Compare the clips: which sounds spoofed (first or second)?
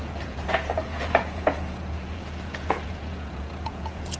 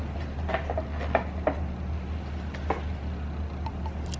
first